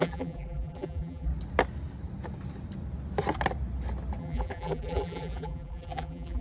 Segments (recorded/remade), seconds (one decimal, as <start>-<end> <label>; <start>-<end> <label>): 0.0-1.3 remade; 1.3-4.2 recorded; 4.2-6.4 remade